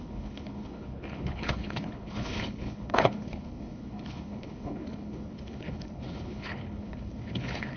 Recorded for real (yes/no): no